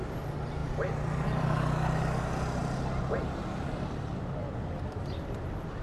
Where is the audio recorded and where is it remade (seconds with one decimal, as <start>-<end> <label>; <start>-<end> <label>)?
0.0-0.6 recorded; 0.6-1.6 remade; 1.6-5.8 recorded